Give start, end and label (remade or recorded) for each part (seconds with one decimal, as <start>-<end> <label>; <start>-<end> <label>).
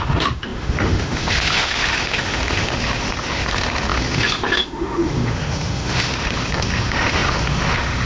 0.0-8.1 remade